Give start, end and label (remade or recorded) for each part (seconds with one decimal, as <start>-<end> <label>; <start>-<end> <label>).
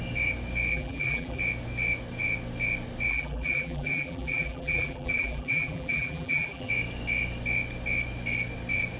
0.0-0.7 recorded; 0.7-1.4 remade; 1.4-3.1 recorded; 3.1-6.7 remade; 6.7-9.0 recorded